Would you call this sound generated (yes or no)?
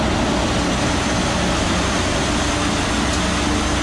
no